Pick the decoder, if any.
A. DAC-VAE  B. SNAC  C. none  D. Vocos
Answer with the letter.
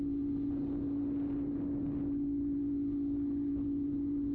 C